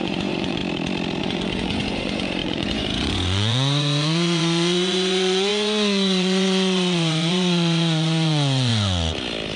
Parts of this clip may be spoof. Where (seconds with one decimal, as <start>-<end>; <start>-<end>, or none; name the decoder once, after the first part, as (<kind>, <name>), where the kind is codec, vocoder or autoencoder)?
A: 0.0-0.6 (vocoder, Vocos); 1.2-8.7